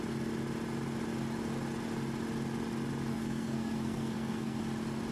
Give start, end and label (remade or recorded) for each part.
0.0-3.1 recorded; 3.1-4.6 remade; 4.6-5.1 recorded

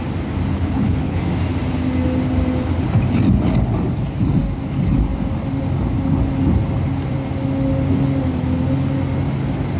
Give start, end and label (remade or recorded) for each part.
0.0-0.5 recorded; 0.5-1.2 remade; 1.2-9.8 recorded